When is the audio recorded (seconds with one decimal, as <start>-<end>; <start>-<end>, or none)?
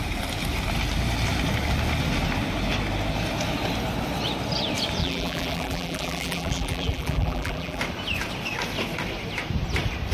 0.0-5.0; 7.8-10.1